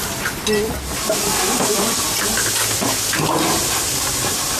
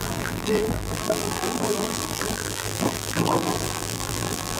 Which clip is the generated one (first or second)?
second